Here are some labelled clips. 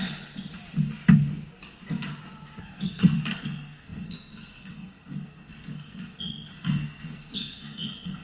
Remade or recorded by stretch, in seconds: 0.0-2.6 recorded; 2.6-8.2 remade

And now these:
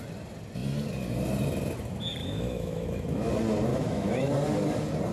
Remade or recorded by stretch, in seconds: 0.0-2.2 recorded; 2.2-3.3 remade; 3.3-3.7 recorded; 3.7-4.3 remade; 4.3-5.1 recorded

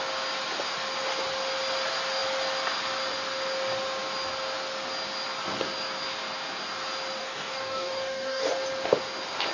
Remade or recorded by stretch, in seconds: 0.0-7.2 recorded; 7.2-8.5 remade; 8.5-9.5 recorded

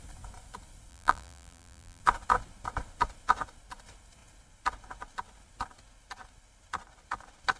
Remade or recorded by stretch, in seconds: 0.0-0.9 recorded; 0.9-2.0 remade; 2.0-7.6 recorded

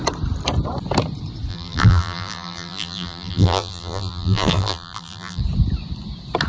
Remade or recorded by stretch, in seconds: 0.0-1.5 recorded; 1.5-5.4 remade; 5.4-6.5 recorded

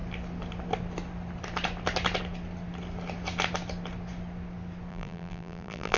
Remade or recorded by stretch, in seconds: 0.0-4.9 recorded; 4.9-6.0 remade